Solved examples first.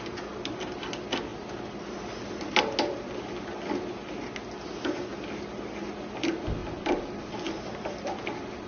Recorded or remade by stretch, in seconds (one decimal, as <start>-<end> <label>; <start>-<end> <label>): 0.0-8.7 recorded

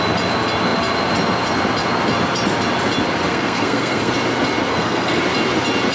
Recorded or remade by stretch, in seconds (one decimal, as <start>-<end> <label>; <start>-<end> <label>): 0.0-3.3 recorded; 3.3-4.1 remade; 4.1-4.7 recorded; 4.7-5.2 remade; 5.2-5.9 recorded

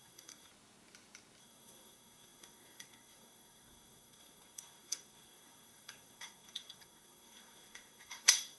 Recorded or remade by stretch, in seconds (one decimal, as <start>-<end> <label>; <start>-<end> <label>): 0.0-0.5 remade; 0.5-1.4 recorded; 1.4-8.6 remade

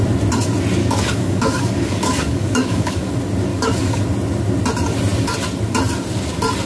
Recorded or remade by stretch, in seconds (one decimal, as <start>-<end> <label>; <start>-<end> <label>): 0.0-0.8 recorded; 0.8-3.1 remade; 3.1-3.5 recorded; 3.5-4.0 remade; 4.0-6.7 recorded

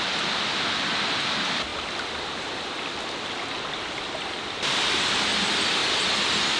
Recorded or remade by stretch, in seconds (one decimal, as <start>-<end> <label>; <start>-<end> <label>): 0.0-6.6 recorded

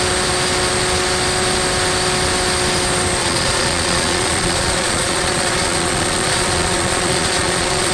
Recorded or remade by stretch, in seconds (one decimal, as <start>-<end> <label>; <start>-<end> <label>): 0.0-3.2 recorded; 3.2-7.9 remade

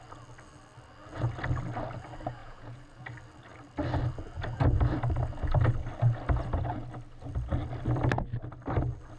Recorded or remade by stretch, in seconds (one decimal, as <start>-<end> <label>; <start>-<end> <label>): 0.0-2.4 recorded; 2.4-3.0 remade; 3.0-9.2 recorded

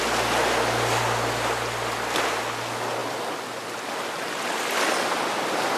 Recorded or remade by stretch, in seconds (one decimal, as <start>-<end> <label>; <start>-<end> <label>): 0.0-5.8 recorded